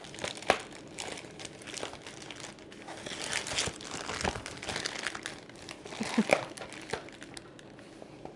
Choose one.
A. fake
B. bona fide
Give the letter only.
B